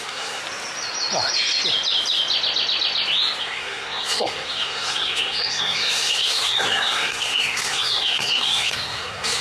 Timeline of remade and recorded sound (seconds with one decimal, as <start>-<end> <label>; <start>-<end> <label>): 0.0-0.4 remade; 0.4-3.4 recorded; 3.4-9.4 remade